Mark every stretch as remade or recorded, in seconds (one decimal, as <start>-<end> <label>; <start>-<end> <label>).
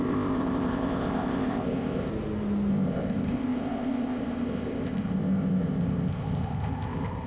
0.0-2.1 remade; 2.1-2.7 recorded; 2.7-7.3 remade